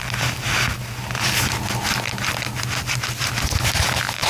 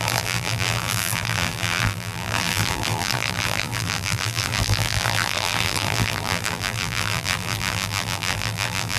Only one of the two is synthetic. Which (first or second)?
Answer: second